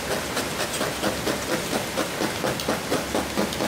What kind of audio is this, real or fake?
real